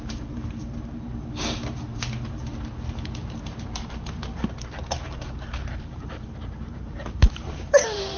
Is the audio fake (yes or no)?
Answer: yes